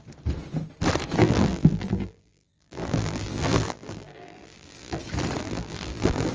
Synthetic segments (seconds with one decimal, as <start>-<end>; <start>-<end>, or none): 1.2-5.0; 5.4-6.3